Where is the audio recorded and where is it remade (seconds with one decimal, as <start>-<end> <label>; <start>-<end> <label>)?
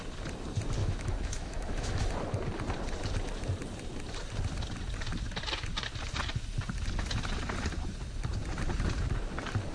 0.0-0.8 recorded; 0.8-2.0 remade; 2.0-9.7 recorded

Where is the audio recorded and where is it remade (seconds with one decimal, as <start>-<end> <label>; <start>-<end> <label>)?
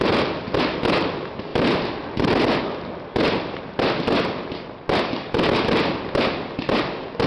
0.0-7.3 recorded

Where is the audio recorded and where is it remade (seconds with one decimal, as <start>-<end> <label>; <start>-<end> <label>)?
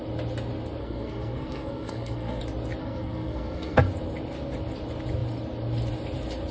0.0-0.8 recorded; 0.8-2.4 remade; 2.4-2.8 recorded; 2.8-3.8 remade; 3.8-6.5 recorded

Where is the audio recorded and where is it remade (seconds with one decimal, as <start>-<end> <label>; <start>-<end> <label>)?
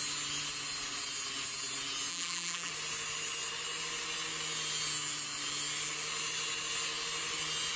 0.0-2.1 recorded; 2.1-2.7 remade; 2.7-7.8 recorded